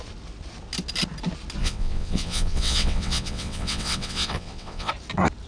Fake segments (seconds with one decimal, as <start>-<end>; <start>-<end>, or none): 1.6-4.9